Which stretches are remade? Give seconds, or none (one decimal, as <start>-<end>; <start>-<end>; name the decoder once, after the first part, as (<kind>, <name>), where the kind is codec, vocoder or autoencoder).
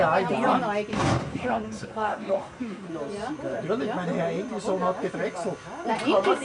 0.9-2.9 (codec, SNAC)